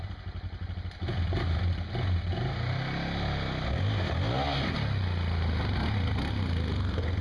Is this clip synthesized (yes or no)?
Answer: no